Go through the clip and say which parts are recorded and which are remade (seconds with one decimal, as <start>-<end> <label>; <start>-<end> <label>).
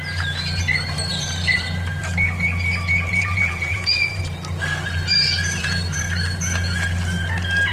0.0-3.1 recorded; 3.1-4.2 remade; 4.2-7.7 recorded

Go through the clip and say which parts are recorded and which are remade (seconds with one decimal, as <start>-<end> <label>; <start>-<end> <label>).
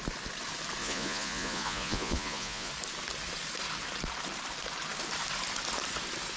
0.0-0.8 recorded; 0.8-2.7 remade; 2.7-6.4 recorded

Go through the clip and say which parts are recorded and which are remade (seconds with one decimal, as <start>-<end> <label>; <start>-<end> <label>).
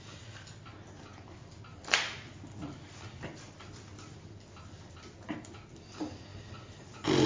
0.0-7.3 recorded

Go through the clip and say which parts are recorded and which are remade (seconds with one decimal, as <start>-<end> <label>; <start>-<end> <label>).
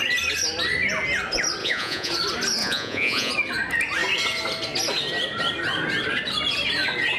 0.0-1.6 recorded; 1.6-2.1 remade; 2.1-2.6 recorded; 2.6-3.3 remade; 3.3-7.2 recorded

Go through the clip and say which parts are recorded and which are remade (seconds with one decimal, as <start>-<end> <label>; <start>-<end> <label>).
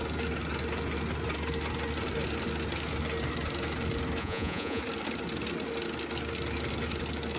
0.0-4.2 recorded; 4.2-4.8 remade; 4.8-7.4 recorded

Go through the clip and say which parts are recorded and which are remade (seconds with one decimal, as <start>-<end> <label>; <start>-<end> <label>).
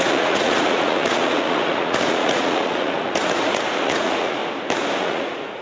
0.0-4.4 remade; 4.4-5.0 recorded; 5.0-5.6 remade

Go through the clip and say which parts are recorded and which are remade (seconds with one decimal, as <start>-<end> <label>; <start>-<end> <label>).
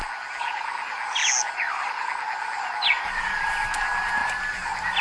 0.0-5.0 recorded